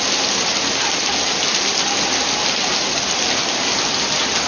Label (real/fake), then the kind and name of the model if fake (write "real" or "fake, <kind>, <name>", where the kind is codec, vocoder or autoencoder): real